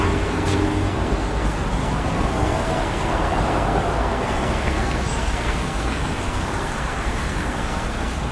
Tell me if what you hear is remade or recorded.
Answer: remade